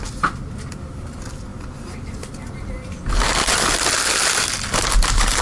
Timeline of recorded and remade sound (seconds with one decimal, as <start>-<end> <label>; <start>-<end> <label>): 0.0-5.4 recorded